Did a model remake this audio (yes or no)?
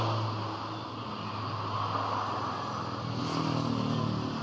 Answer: no